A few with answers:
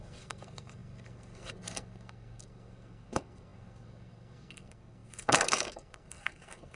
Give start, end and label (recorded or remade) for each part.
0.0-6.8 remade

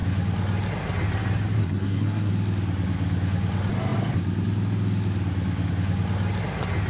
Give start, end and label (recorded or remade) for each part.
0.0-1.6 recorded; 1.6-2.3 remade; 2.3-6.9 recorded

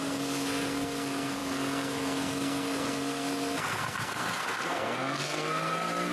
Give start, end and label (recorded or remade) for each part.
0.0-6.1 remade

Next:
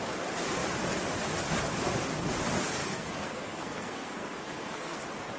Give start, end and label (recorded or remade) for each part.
0.0-2.8 recorded; 2.8-5.0 remade; 5.0-5.4 recorded